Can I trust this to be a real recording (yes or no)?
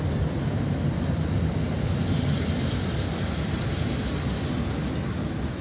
yes